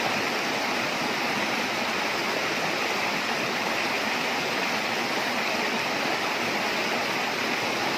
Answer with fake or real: real